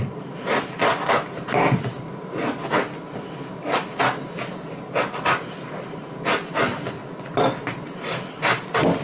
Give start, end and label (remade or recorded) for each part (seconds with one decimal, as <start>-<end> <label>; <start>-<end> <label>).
0.0-9.0 recorded

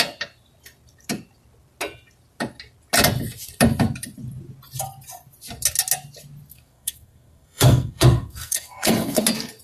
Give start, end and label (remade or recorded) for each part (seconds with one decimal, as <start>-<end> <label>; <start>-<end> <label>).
0.0-6.5 recorded; 6.5-9.2 remade; 9.2-9.6 recorded

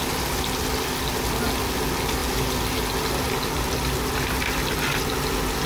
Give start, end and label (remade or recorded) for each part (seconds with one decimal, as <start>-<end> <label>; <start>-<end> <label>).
0.0-5.7 recorded